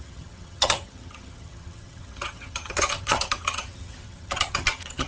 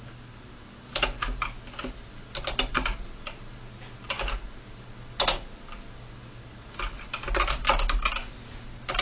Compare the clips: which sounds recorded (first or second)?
second